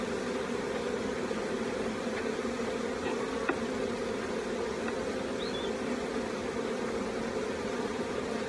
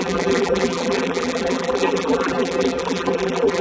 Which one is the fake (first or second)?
second